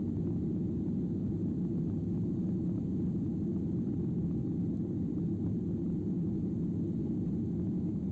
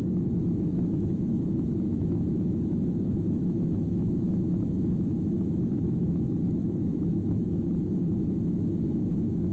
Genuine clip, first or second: first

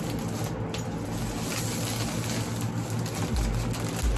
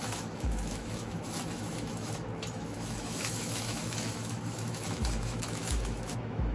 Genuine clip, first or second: first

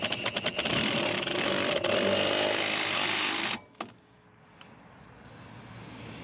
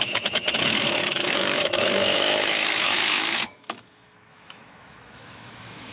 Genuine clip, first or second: first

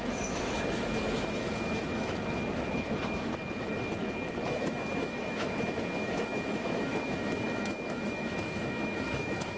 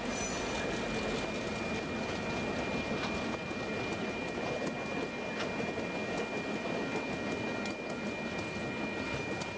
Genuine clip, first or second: second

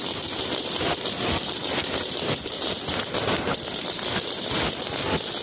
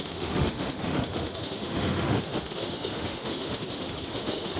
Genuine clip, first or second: first